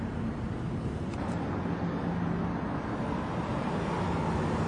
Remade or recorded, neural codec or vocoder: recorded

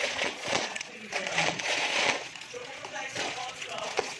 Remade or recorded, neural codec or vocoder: remade, vocoder, Vocos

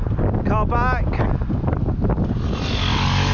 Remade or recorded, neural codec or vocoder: recorded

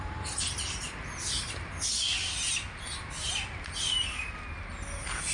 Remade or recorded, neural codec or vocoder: recorded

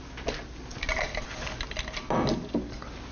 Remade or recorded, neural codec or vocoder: recorded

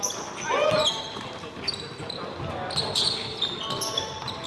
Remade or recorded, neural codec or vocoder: recorded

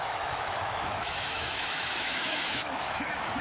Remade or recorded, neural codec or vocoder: remade, autoencoder, DAC-VAE